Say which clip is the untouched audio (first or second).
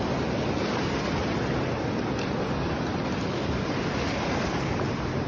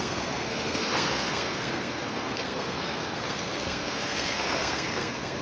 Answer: first